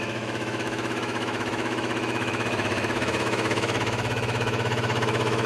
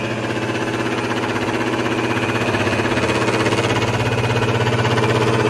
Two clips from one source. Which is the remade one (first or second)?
first